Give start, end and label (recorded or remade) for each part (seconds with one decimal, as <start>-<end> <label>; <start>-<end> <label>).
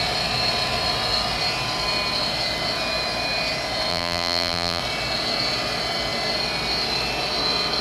0.0-3.9 recorded; 3.9-4.8 remade; 4.8-7.8 recorded